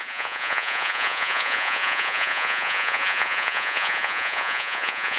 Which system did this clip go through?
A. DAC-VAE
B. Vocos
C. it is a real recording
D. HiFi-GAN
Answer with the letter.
B